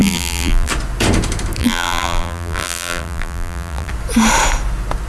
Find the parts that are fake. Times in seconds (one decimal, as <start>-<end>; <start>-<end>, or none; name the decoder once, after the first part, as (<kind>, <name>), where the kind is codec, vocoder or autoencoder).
0.0-0.7 (vocoder, BigVGAN v2); 1.6-3.9